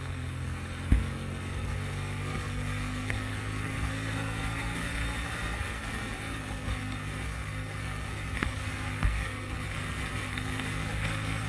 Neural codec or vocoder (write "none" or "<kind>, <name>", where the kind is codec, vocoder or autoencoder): codec, SNAC